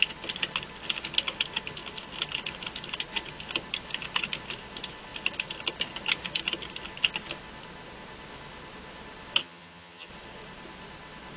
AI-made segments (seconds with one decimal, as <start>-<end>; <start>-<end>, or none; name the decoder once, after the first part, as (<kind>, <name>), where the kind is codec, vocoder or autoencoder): 9.4-10.1 (vocoder, HiFi-GAN)